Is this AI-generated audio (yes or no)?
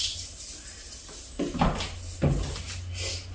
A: no